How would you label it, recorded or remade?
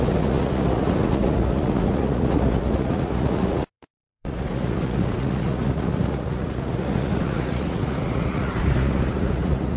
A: remade